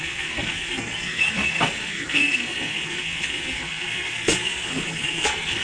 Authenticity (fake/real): fake